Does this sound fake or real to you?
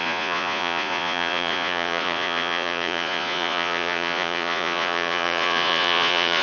fake